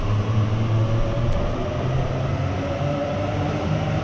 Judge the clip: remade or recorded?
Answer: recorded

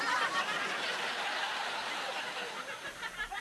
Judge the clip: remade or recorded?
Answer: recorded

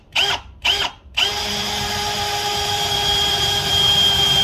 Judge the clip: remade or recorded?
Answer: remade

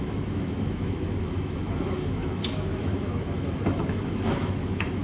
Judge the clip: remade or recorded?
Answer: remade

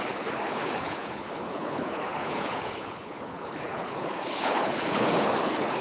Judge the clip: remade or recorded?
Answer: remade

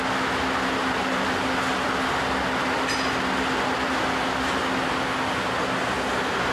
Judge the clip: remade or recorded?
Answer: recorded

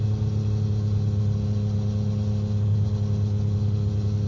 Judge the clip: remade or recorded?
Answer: recorded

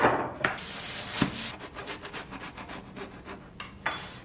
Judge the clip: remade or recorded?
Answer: recorded